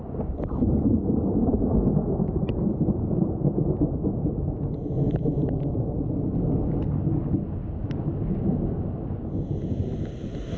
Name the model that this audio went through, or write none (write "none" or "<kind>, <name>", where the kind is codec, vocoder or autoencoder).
none